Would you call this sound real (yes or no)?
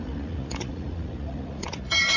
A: no